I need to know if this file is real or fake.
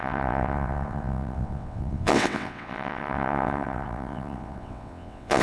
fake